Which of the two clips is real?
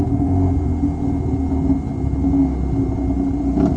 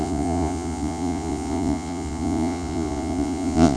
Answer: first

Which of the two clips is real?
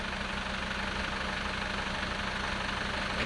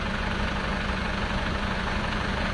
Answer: first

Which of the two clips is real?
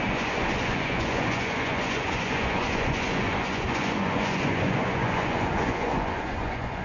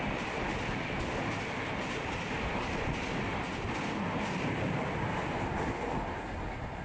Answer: second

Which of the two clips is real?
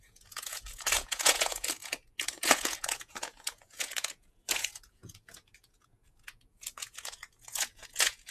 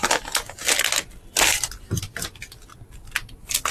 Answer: second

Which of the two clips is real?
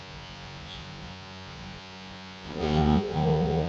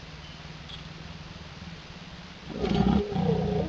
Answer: second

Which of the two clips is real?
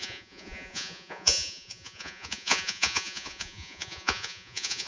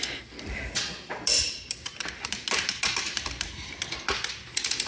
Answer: second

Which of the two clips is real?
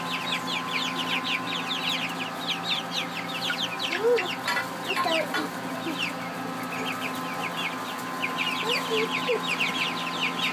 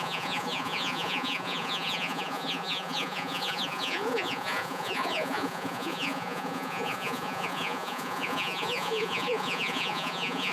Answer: first